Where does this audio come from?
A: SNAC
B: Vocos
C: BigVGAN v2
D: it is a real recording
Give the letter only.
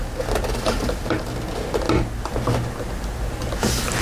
D